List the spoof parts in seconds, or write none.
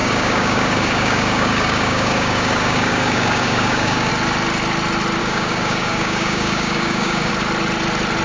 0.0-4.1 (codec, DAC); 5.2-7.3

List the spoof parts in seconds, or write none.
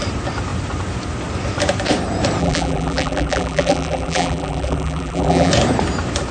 2.4-5.5 (vocoder, BigVGAN v2)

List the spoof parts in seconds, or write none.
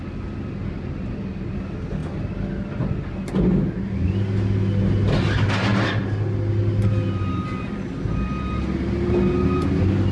none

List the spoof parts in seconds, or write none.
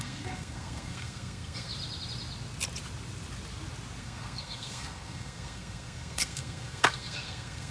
0.0-1.7 (codec, SNAC); 4.0-7.7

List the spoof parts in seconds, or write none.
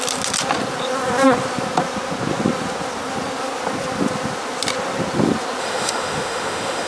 5.6-6.9 (autoencoder, DAC-VAE)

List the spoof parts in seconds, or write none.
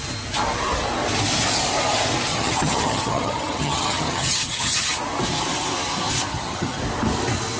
2.3-5.0 (vocoder, HiFi-GAN); 6.3-6.8